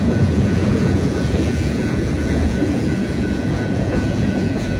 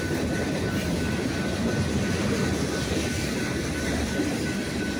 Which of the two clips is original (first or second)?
second